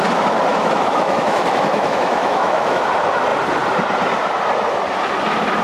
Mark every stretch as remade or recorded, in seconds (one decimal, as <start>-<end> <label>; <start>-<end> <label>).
0.0-0.5 recorded; 0.5-2.8 remade; 2.8-5.6 recorded